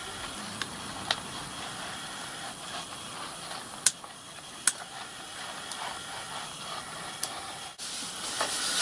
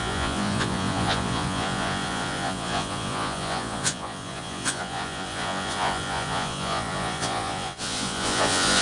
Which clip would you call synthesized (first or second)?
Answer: second